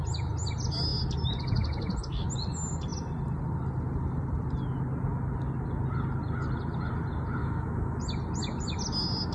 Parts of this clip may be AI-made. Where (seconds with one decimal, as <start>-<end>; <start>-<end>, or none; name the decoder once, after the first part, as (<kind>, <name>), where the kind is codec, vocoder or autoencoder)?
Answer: 7.4-8.0 (autoencoder, DAC-VAE)